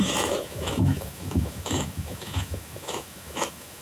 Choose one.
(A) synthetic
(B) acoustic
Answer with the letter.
A